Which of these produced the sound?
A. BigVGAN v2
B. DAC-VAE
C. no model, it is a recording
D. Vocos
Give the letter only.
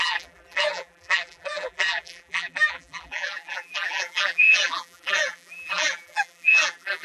A